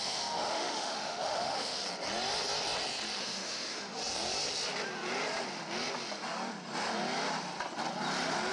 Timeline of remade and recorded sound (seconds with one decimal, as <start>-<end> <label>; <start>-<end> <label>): 0.0-1.8 remade; 1.8-3.2 recorded; 3.2-4.0 remade; 4.0-8.5 recorded